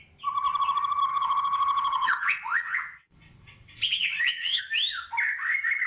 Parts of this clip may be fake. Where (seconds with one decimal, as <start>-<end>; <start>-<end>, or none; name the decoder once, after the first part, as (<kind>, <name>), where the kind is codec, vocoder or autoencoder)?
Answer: 1.1-4.6 (vocoder, WaveNeXt)